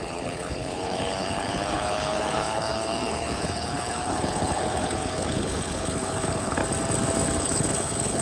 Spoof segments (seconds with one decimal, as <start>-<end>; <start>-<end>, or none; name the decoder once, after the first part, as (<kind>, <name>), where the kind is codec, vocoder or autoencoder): 0.0-6.6 (codec, HILCodec); 7.4-8.2